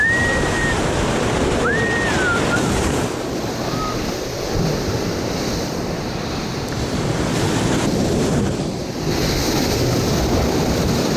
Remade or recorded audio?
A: remade